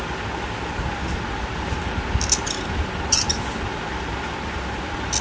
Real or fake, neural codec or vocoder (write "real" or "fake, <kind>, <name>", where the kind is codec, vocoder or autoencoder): real